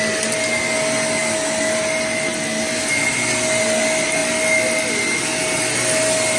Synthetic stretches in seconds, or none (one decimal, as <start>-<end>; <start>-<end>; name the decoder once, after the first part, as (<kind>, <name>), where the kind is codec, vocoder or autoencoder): none